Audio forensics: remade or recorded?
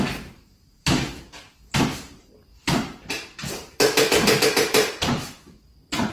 remade